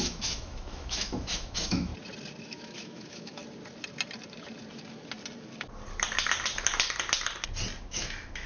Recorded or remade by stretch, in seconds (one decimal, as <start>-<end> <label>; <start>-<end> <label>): 0.0-1.9 remade; 1.9-2.4 recorded; 2.4-3.4 remade; 3.4-7.8 recorded; 7.8-8.5 remade

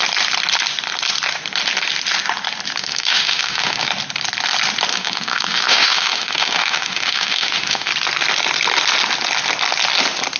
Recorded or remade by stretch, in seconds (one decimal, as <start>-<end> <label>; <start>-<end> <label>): 0.0-2.8 recorded; 2.8-3.9 remade; 3.9-4.9 recorded; 4.9-7.9 remade; 7.9-10.4 recorded